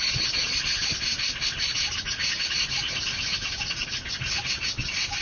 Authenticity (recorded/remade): recorded